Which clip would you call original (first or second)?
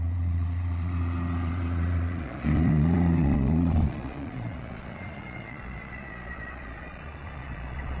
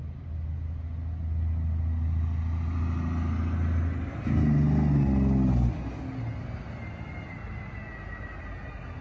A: second